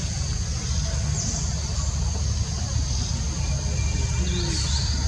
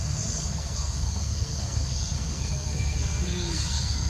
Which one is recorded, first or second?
first